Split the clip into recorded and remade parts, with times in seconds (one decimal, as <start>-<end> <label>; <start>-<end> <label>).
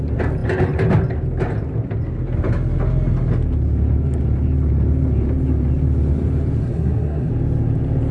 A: 0.0-6.6 recorded; 6.6-7.3 remade; 7.3-8.1 recorded